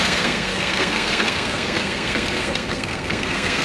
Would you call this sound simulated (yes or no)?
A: yes